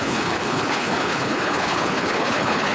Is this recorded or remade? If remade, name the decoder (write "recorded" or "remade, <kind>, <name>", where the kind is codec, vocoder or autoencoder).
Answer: remade, codec, HILCodec